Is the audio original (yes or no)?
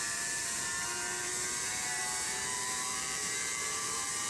no